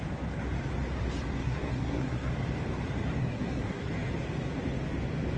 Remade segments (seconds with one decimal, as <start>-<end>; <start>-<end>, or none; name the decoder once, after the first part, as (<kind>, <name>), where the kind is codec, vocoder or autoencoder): 1.4-2.3 (codec, SNAC); 3.2-3.9